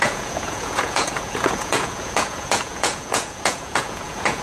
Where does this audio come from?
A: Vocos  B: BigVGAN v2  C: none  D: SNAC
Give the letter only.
A